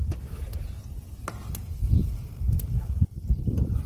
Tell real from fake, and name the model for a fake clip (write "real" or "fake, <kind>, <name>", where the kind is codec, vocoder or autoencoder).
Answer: real